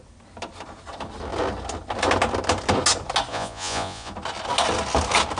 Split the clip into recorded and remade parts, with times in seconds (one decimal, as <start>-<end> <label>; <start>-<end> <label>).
0.0-3.3 recorded; 3.3-4.1 remade; 4.1-5.4 recorded